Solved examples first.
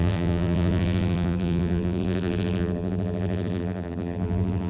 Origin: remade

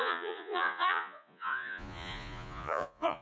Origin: remade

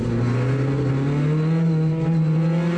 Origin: recorded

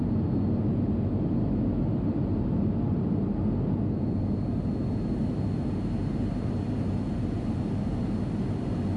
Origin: recorded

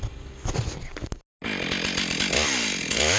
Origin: recorded